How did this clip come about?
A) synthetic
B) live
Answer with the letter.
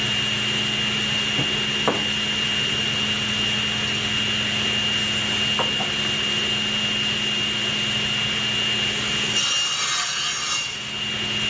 B